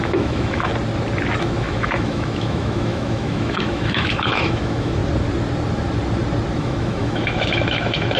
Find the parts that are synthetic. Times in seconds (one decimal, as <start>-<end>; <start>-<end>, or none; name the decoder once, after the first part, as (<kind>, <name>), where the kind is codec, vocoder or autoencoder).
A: 0.0-0.7 (autoencoder, DAC-VAE); 1.4-5.0; 6.6-8.2